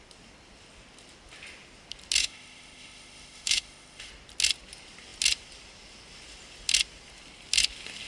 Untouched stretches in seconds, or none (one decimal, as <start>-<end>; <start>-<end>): 0.0-2.2; 4.1-8.1